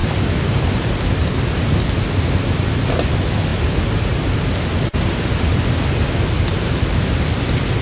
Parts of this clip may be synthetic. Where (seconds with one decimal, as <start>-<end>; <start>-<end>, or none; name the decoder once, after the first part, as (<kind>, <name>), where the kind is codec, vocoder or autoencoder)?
none